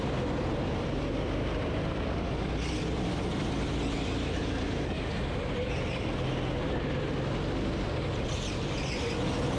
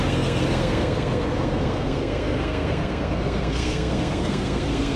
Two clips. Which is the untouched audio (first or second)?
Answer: first